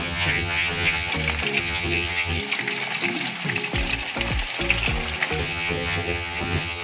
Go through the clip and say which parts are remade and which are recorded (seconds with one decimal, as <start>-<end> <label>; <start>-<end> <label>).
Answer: 0.0-1.1 remade; 1.1-1.6 recorded; 1.6-2.4 remade; 2.4-5.4 recorded; 5.4-6.8 remade